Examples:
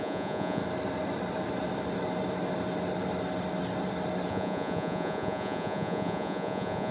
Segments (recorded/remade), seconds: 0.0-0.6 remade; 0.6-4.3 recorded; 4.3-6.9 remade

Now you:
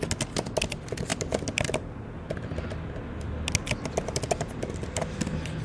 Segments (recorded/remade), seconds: 0.0-5.6 recorded

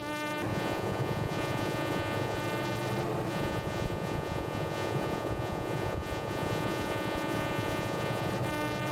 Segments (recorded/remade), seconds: 0.0-0.5 recorded; 0.5-2.4 remade; 2.4-3.3 recorded; 3.3-8.3 remade; 8.3-8.9 recorded

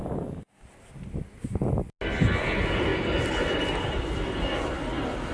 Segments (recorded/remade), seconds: 0.0-5.3 recorded